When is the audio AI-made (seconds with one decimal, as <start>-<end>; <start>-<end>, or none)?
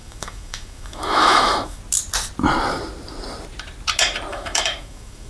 0.0-1.8; 4.3-5.3